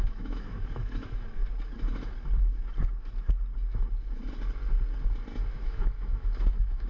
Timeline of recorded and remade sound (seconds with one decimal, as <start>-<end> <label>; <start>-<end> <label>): 0.0-1.4 remade; 1.4-5.5 recorded; 5.5-6.9 remade